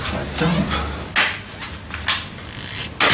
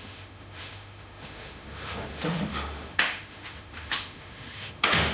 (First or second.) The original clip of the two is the first